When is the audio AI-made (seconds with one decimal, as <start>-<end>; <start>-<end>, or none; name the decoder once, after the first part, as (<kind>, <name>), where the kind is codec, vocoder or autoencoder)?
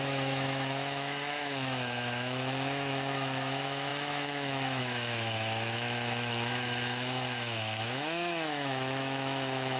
0.0-9.8 (autoencoder, DAC-VAE)